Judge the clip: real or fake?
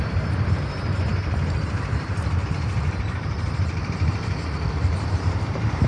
fake